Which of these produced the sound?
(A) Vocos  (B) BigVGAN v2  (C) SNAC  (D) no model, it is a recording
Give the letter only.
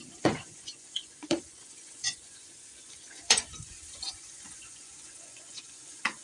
A